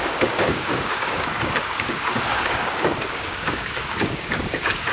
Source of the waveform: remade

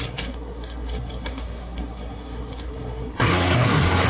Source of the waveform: remade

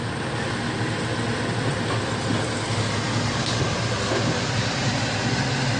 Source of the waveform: recorded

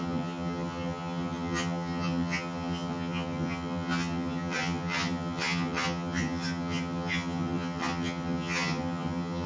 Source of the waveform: remade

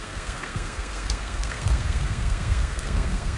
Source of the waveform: remade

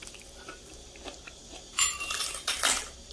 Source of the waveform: remade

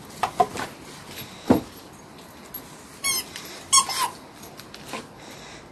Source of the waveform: recorded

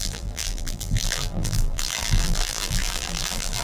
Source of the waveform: remade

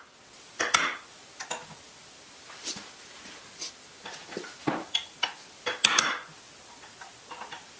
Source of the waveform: recorded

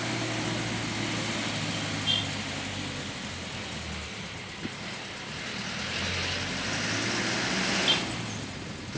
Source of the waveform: recorded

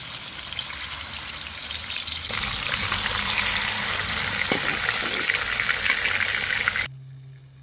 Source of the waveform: recorded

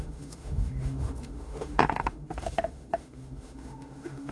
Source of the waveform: remade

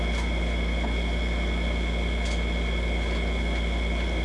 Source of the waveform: recorded